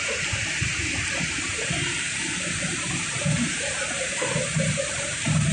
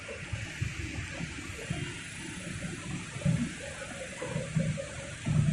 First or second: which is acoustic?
second